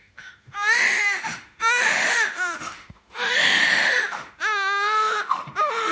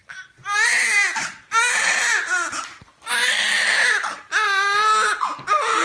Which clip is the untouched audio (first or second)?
second